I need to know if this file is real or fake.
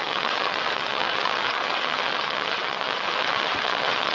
fake